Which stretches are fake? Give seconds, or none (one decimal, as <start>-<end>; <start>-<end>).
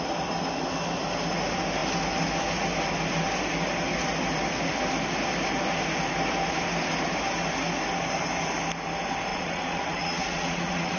9.3-11.0